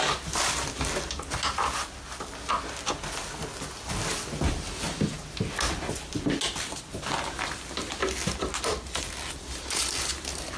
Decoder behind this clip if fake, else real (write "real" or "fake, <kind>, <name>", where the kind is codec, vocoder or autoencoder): real